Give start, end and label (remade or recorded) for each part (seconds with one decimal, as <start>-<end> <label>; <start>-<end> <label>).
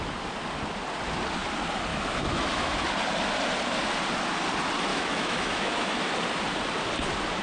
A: 0.0-1.9 recorded; 1.9-2.9 remade; 2.9-4.9 recorded; 4.9-6.1 remade; 6.1-7.4 recorded